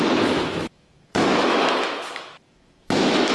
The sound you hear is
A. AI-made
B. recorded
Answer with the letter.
A